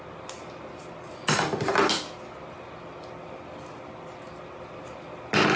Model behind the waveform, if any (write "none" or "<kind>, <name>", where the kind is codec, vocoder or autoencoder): none